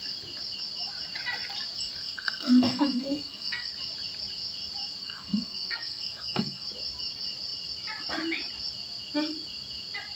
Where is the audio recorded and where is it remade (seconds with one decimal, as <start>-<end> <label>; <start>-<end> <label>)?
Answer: 0.0-2.0 recorded; 2.0-3.7 remade; 3.7-5.0 recorded; 5.0-6.7 remade; 6.7-10.2 recorded